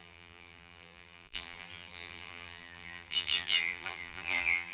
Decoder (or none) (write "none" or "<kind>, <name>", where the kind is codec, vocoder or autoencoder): vocoder, BigVGAN v2